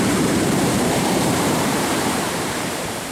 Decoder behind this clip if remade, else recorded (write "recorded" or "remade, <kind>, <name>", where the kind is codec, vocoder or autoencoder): remade, vocoder, BigVGAN v2